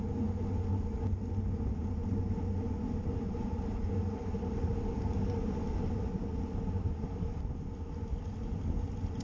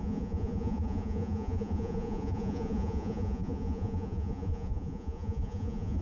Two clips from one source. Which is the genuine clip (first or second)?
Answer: first